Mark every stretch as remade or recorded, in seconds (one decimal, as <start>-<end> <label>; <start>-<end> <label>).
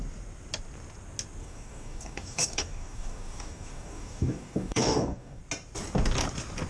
0.0-1.4 recorded; 1.4-5.4 remade; 5.4-6.7 recorded